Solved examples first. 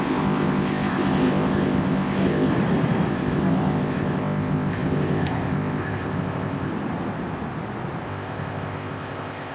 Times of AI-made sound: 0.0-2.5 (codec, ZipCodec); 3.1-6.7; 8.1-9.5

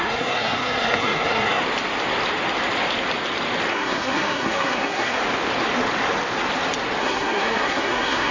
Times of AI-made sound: 0.0-1.6 (codec, SNAC); 3.7-5.2; 7.0-8.3